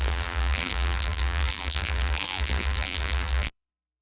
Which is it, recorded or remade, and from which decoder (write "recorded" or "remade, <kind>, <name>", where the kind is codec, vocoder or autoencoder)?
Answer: remade, vocoder, BigVGAN v2